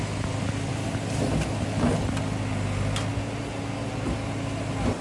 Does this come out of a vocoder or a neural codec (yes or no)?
no